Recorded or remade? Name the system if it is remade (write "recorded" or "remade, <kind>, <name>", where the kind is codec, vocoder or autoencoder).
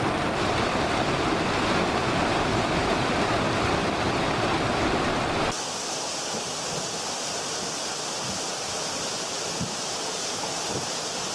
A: recorded